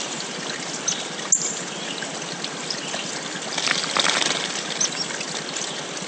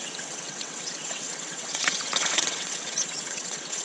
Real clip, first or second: first